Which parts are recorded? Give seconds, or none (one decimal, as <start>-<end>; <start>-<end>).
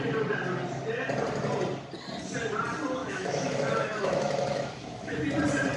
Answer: 0.0-3.0; 5.2-5.8